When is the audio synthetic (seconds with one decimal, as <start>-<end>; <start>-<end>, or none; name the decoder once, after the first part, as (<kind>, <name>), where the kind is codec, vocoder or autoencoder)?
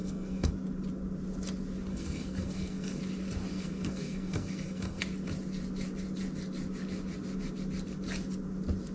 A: 0.0-0.5 (codec, SNAC); 1.9-3.0; 3.5-5.0